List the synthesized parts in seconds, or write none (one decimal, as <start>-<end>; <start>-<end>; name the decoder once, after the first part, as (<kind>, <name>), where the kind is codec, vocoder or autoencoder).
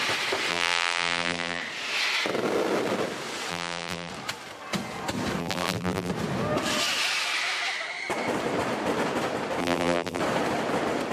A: 0.5-1.6 (vocoder, BigVGAN v2); 3.5-4.1; 5.4-6.1; 9.6-10.2